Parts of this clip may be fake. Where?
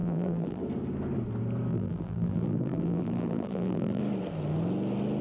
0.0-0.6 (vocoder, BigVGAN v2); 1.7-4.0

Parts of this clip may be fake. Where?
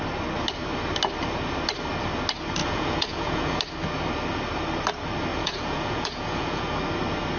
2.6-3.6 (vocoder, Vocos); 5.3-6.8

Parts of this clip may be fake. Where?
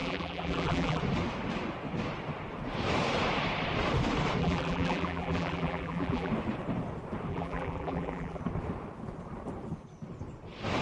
0.0-1.0 (vocoder, BigVGAN v2); 4.4-6.3; 7.3-8.4